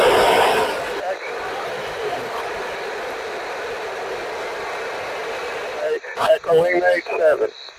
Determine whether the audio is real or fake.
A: real